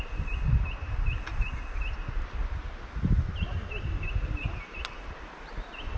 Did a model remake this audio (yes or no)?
no